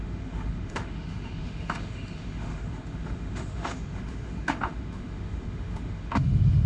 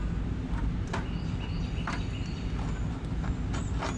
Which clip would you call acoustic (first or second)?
second